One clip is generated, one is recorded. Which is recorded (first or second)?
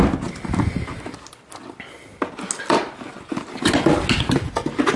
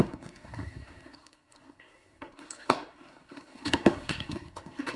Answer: first